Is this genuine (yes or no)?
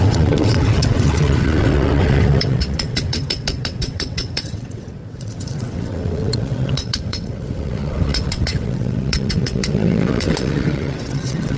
no